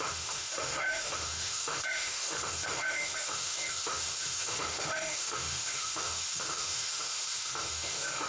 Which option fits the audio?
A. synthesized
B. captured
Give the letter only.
A